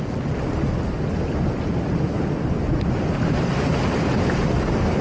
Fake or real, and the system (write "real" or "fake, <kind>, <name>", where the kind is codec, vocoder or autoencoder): real